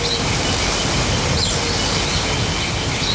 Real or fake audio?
real